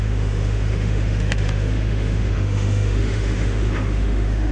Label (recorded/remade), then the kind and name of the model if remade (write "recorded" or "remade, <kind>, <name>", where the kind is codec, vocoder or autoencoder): remade, autoencoder, DAC-VAE